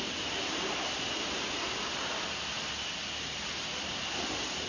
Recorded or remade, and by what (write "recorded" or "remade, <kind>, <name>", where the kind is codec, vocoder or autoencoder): recorded